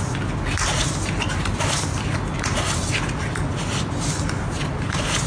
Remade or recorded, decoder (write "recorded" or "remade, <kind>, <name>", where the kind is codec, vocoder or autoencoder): recorded